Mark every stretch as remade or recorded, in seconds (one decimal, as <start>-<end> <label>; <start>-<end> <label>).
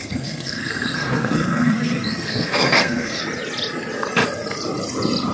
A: 0.0-3.2 remade; 3.2-5.3 recorded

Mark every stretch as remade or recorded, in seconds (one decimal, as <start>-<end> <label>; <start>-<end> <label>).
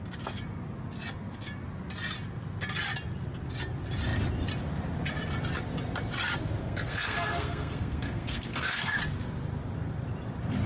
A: 0.0-6.6 recorded; 6.6-9.0 remade; 9.0-10.7 recorded